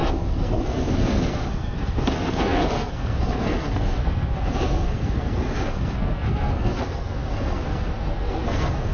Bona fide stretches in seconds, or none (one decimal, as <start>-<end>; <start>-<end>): none